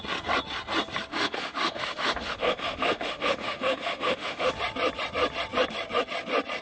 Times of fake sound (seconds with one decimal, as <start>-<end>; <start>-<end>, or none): 1.1-4.5